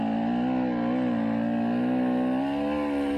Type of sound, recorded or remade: recorded